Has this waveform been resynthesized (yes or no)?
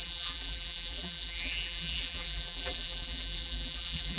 yes